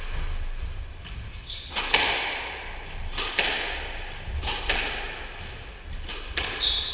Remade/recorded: recorded